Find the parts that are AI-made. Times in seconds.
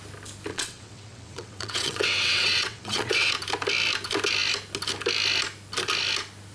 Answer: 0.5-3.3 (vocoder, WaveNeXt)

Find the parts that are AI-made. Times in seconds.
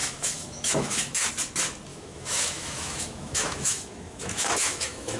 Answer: 0.0-1.3 (autoencoder, DAC-VAE); 1.9-5.2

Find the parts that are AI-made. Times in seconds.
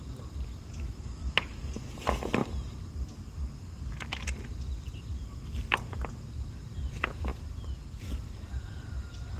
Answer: none